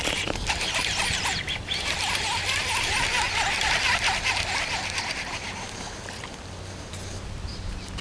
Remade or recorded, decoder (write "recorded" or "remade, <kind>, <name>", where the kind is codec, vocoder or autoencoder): recorded